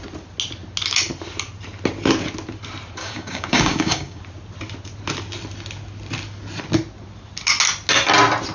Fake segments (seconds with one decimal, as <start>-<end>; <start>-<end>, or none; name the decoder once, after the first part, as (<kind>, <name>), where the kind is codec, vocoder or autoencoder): 3.0-4.2 (codec, DAC)